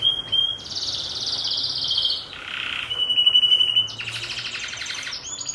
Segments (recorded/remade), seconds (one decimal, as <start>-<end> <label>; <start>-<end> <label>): 0.0-5.5 recorded

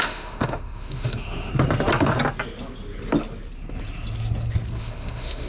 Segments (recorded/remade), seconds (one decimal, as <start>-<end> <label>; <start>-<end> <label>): 0.0-1.5 remade; 1.5-4.8 recorded; 4.8-5.5 remade